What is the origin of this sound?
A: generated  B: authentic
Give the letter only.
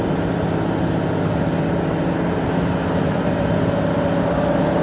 B